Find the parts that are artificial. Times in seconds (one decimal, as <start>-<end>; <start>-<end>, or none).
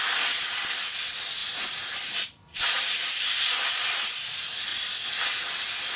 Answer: 1.4-3.7